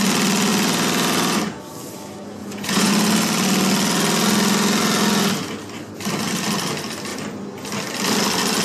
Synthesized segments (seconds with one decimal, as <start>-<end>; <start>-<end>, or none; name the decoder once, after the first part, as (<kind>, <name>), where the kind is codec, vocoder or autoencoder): 2.4-2.9 (vocoder, Vocos)